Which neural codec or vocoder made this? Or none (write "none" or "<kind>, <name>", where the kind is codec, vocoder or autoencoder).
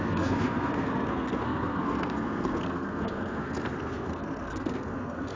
codec, SNAC